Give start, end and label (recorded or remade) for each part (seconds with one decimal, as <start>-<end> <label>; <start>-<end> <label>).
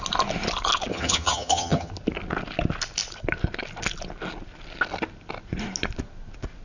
0.0-0.9 recorded; 0.9-1.9 remade; 1.9-6.6 recorded